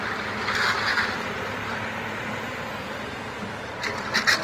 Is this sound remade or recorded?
recorded